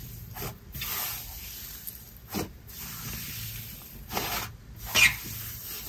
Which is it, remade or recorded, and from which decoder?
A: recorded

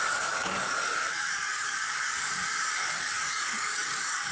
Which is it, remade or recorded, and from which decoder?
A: remade, codec, DAC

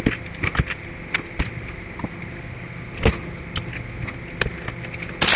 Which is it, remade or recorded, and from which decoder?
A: recorded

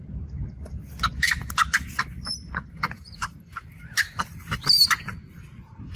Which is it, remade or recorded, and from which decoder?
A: recorded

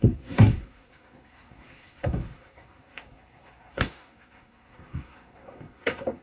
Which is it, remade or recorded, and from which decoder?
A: remade, codec, SNAC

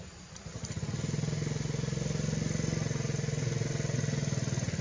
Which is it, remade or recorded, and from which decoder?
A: recorded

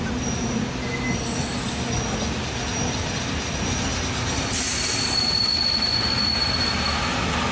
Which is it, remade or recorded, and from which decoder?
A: recorded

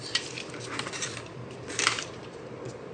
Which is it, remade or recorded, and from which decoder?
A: remade, vocoder, BigVGAN v2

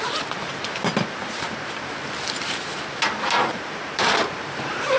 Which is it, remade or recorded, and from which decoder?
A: remade, vocoder, BigVGAN v2